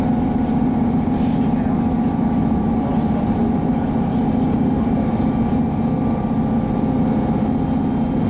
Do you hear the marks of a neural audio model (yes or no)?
no